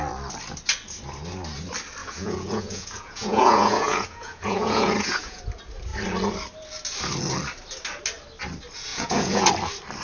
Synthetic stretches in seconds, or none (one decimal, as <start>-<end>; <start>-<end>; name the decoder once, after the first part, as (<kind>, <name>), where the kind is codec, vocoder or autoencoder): 2.0-5.4 (vocoder, Vocos); 8.9-9.5